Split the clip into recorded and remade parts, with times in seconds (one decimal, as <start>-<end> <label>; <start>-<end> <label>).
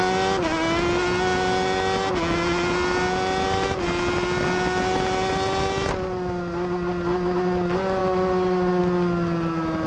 0.0-9.9 recorded